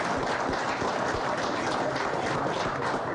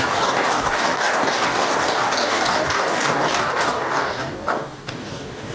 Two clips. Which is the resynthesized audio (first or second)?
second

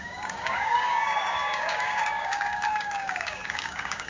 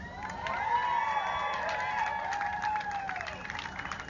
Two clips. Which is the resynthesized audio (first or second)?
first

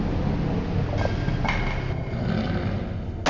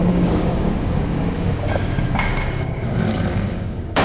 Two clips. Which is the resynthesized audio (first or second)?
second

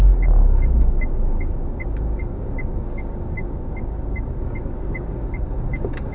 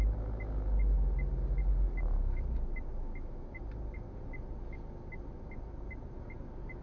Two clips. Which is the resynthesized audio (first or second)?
first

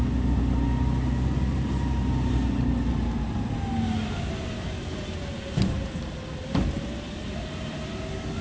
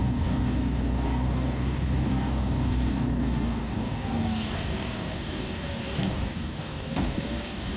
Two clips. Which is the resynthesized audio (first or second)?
second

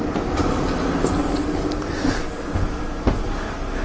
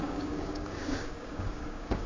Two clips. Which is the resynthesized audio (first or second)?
second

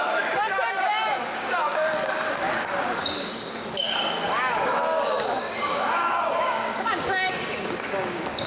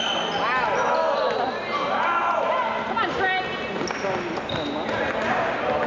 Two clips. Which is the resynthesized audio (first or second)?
first